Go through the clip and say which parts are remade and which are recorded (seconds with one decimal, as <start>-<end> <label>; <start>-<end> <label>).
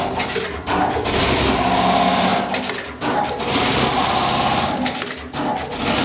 0.0-2.3 recorded; 2.3-6.0 remade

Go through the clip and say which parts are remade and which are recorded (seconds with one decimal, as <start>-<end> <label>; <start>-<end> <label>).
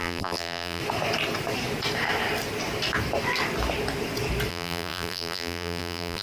0.0-0.8 remade; 0.8-4.5 recorded; 4.5-6.2 remade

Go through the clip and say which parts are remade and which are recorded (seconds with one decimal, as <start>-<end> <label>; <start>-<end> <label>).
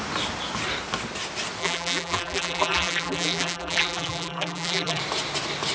0.0-1.6 recorded; 1.6-5.0 remade; 5.0-5.7 recorded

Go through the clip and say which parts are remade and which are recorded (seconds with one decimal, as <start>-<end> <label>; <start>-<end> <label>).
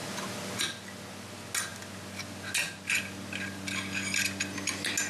0.0-5.1 recorded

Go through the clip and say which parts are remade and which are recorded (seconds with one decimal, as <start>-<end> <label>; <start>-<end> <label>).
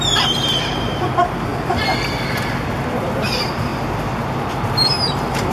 0.0-1.5 remade; 1.5-2.7 recorded; 2.7-3.7 remade; 3.7-4.5 recorded; 4.5-5.5 remade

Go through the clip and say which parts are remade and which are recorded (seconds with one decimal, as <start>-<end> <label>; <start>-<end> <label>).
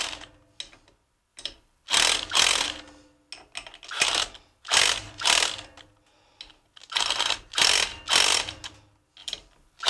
0.0-1.3 recorded; 1.3-1.9 remade; 1.9-5.0 recorded; 5.0-5.9 remade; 5.9-9.2 recorded; 9.2-9.9 remade